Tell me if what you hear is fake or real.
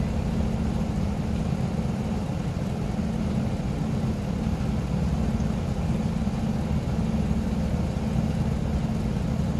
real